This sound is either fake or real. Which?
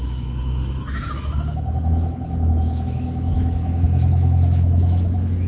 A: fake